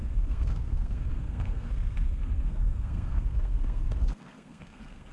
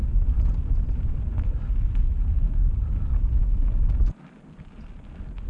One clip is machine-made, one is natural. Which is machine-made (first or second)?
first